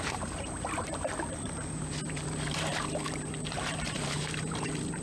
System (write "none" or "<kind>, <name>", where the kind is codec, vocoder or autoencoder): vocoder, BigVGAN v2